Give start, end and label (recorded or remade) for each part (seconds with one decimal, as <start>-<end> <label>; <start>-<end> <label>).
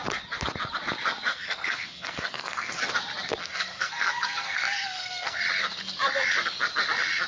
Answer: 0.0-1.3 recorded; 1.3-2.8 remade; 2.8-3.4 recorded; 3.4-5.4 remade; 5.4-7.3 recorded